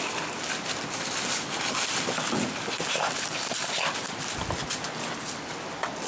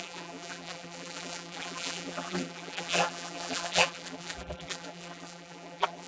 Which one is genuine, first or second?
first